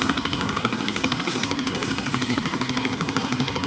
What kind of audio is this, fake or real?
fake